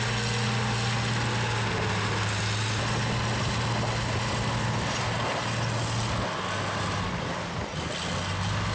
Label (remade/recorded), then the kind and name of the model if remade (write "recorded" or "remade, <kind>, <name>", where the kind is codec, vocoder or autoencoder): recorded